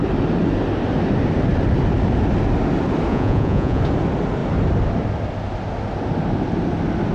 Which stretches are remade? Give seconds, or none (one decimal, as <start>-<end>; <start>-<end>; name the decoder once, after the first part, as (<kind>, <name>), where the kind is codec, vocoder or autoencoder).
3.1-3.8 (vocoder, Vocos)